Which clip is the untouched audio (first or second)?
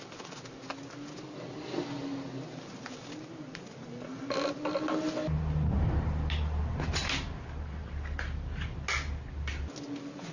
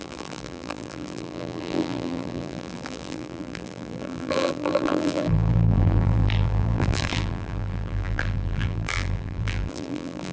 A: first